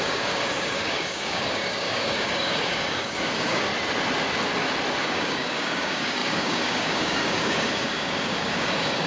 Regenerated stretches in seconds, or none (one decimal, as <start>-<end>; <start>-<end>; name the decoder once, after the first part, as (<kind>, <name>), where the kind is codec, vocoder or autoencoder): 0.0-3.7 (codec, DAC); 5.0-9.1